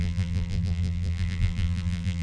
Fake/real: fake